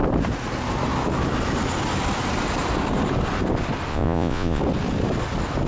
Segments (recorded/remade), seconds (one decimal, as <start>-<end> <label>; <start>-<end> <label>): 0.0-3.9 recorded; 3.9-4.6 remade; 4.6-5.7 recorded